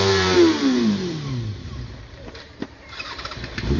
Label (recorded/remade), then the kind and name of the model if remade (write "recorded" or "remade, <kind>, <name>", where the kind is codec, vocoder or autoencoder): remade, vocoder, BigVGAN v2